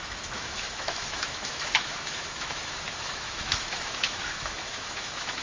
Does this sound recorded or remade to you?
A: remade